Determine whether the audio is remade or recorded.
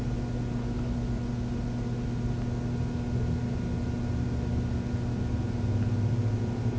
recorded